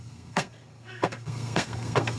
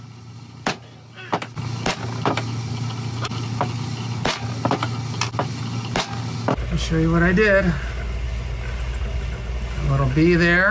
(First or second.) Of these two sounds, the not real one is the first